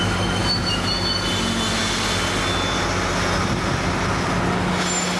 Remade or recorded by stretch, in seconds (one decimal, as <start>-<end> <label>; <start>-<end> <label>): 0.0-5.2 recorded